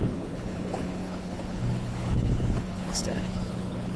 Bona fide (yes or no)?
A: no